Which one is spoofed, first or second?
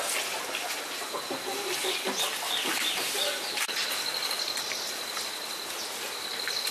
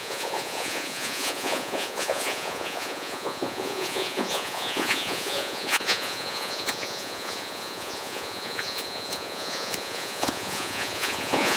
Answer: second